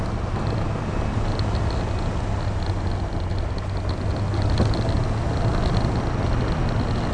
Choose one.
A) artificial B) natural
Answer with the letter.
B